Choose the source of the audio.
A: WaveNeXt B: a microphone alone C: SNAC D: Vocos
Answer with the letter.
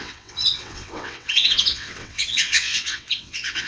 A